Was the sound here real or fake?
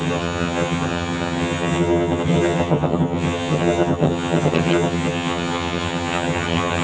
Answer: fake